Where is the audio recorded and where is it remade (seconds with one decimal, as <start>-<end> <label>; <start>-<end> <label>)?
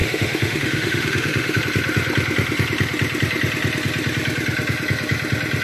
0.0-1.6 remade; 1.6-5.6 recorded